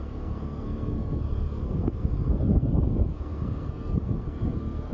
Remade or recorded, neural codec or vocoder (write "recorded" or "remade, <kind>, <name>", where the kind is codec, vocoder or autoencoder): remade, codec, SNAC